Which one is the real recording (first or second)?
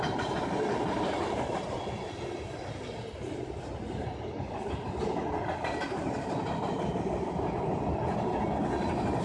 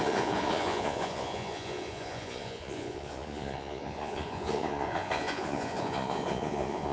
first